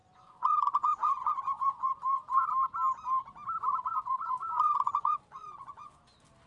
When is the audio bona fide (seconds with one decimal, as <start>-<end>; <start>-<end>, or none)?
2.5-3.9; 6.0-6.5